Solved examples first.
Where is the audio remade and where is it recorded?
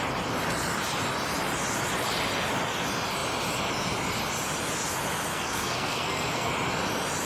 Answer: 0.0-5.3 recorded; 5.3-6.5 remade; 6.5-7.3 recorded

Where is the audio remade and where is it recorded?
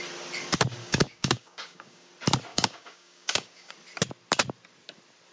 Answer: 0.0-0.8 recorded; 0.8-2.1 remade; 2.1-2.5 recorded; 2.5-3.7 remade; 3.7-5.3 recorded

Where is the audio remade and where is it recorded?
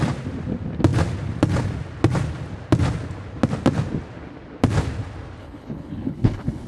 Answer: 0.0-5.4 recorded; 5.4-6.7 remade